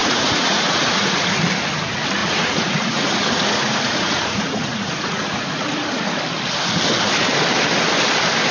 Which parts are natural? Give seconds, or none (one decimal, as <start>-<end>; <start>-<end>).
1.3-2.2; 6.2-8.5